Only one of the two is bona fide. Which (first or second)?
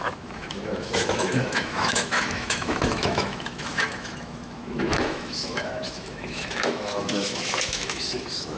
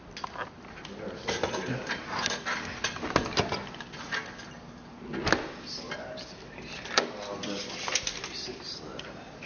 second